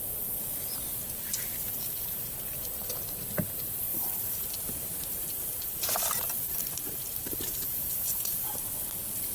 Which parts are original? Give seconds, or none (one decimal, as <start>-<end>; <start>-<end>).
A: 0.0-3.9; 8.8-9.3